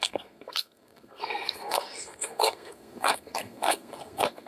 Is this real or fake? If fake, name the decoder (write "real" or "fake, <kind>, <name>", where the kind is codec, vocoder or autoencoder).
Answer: fake, codec, SNAC